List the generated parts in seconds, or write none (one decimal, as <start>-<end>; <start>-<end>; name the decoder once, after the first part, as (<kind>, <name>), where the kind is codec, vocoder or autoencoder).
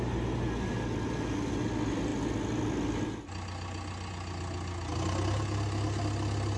none